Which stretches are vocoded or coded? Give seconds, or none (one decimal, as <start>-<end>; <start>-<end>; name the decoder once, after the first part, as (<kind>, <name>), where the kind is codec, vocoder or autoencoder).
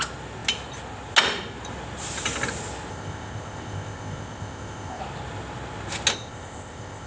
2.9-5.0 (codec, ZipCodec); 6.1-7.1